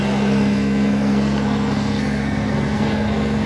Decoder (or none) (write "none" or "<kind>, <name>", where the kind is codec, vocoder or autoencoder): codec, SNAC